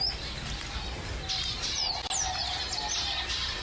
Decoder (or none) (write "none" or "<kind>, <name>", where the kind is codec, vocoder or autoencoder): none